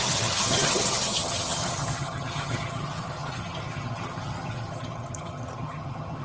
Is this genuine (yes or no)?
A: no